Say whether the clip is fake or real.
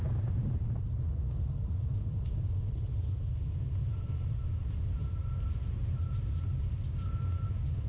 fake